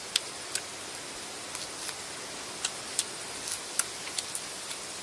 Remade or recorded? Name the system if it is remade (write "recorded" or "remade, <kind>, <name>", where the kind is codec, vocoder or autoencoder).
recorded